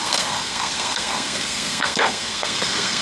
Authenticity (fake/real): fake